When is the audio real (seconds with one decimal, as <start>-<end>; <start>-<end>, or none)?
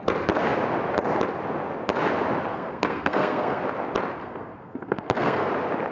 0.0-2.5; 3.6-4.2; 5.5-5.9